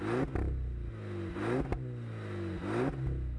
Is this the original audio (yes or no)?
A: yes